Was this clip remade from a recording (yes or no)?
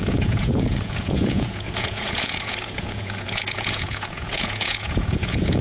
yes